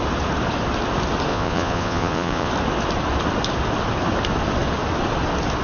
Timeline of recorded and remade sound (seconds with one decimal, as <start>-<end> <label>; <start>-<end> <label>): 0.0-1.3 recorded; 1.3-2.5 remade; 2.5-5.6 recorded

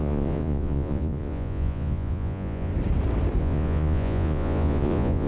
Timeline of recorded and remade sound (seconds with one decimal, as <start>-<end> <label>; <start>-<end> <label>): 0.0-2.7 remade; 2.7-3.4 recorded; 3.4-5.3 remade

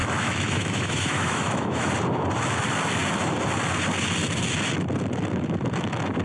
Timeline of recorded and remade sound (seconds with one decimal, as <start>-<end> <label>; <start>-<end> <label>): 0.0-1.9 remade; 1.9-6.2 recorded

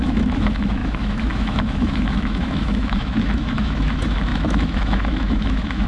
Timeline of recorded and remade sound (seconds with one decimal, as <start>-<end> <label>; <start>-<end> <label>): 0.0-5.9 remade